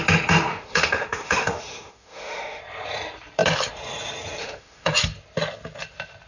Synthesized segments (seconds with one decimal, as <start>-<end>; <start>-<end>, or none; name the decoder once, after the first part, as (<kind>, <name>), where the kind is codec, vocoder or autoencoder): 0.5-2.6 (autoencoder, DAC-VAE); 4.4-4.9